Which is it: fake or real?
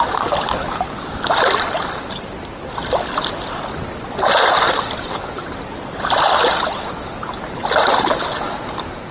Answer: real